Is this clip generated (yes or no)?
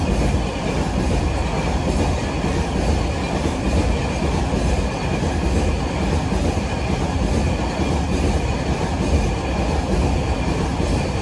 no